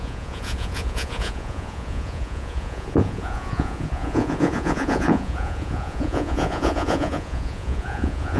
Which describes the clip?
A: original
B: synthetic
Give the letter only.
B